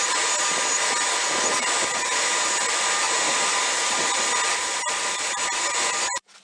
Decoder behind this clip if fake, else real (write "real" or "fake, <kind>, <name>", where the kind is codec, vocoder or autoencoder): real